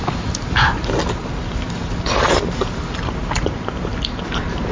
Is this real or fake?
real